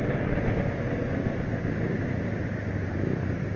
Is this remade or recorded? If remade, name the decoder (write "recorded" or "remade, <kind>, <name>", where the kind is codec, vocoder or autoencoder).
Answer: recorded